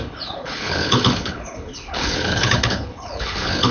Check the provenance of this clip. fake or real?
fake